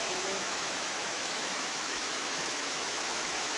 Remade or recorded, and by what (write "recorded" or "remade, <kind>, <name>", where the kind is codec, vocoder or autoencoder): remade, autoencoder, DAC-VAE